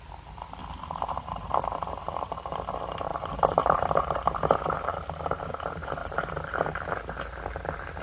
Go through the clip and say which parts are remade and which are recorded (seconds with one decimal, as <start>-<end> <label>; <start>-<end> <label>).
0.0-0.6 recorded; 0.6-2.5 remade; 2.5-3.1 recorded; 3.1-5.2 remade; 5.2-6.0 recorded; 6.0-6.9 remade; 6.9-8.0 recorded